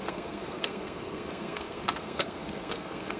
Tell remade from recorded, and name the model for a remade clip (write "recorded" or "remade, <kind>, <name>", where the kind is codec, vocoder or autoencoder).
remade, codec, SNAC